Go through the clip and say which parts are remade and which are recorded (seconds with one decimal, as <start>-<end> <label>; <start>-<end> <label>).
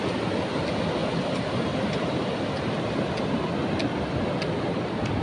0.0-5.2 recorded